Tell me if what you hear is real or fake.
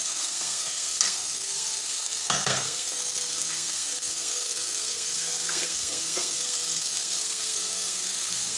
fake